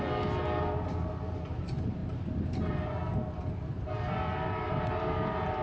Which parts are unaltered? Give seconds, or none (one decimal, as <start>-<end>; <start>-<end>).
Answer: 0.0-5.6